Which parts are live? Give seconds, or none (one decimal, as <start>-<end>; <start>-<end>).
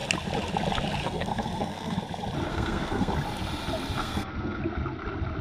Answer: 0.0-1.0; 2.0-2.5; 3.1-4.0; 4.6-5.4